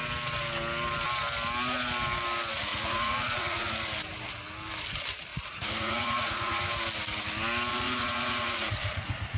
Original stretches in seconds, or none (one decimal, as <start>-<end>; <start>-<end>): 0.0-2.7; 3.7-5.3; 6.7-7.7